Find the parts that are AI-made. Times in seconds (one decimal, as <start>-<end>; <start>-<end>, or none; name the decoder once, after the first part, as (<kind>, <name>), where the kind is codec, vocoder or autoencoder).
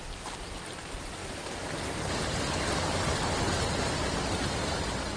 none